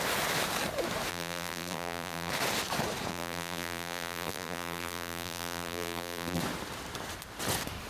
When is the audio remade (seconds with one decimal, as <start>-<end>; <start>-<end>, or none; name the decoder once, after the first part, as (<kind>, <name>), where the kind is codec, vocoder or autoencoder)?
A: 1.1-2.3 (vocoder, BigVGAN v2); 3.1-6.4